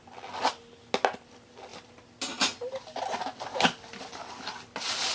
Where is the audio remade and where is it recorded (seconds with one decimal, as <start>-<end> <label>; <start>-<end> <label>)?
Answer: 0.0-5.1 recorded